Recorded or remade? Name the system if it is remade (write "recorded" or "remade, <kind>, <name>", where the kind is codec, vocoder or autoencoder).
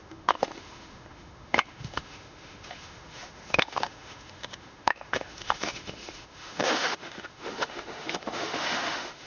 remade, autoencoder, DAC-VAE